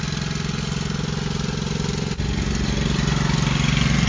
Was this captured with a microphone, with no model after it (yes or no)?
yes